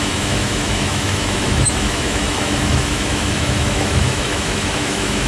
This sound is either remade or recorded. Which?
remade